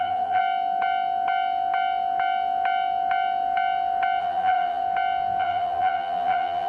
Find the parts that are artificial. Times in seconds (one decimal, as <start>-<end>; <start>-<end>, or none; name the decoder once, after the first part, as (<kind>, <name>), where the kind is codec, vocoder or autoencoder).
0.0-0.4 (vocoder, BigVGAN v2); 4.2-4.8; 5.4-6.7